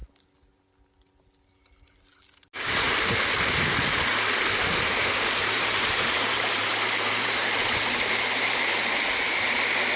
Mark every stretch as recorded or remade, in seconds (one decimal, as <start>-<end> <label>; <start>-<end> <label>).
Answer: 0.0-5.4 recorded; 5.4-6.7 remade; 6.7-7.4 recorded; 7.4-8.4 remade; 8.4-10.0 recorded